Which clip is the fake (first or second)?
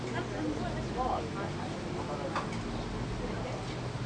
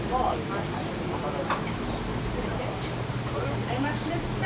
second